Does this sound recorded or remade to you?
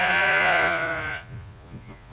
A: remade